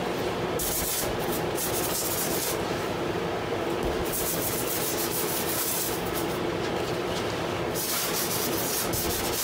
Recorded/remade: remade